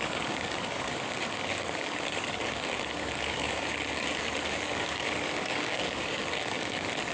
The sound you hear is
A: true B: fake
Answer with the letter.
B